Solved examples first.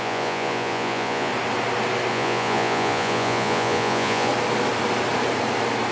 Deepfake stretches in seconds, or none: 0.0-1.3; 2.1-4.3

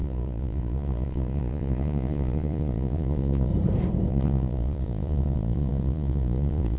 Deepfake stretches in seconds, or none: 0.0-3.5; 4.1-6.8